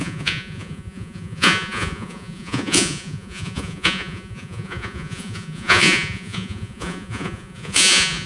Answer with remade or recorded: remade